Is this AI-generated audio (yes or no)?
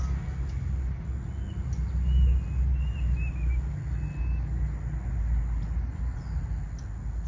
no